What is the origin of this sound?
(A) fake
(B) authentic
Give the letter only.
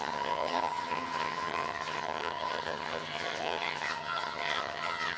A